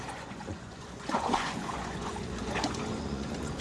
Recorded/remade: remade